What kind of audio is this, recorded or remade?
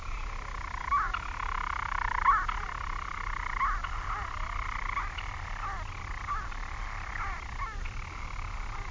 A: recorded